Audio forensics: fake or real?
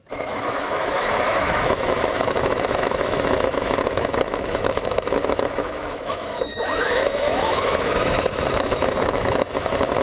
fake